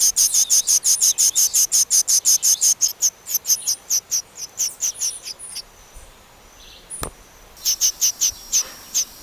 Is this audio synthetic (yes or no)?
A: no